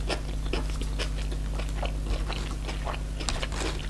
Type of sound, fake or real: real